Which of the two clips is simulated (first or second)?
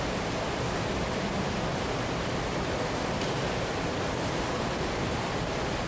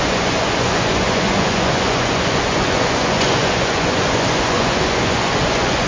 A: second